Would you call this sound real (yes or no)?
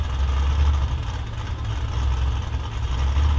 yes